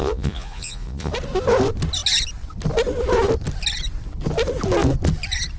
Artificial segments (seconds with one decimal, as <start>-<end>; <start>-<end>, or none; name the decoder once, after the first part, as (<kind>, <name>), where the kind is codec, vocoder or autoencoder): 0.0-1.1 (vocoder, Vocos)